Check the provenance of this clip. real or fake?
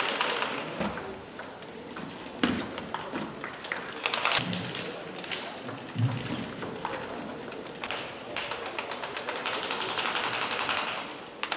real